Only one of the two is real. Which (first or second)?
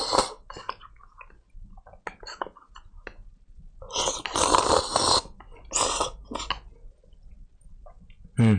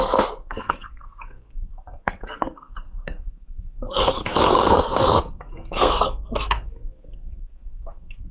first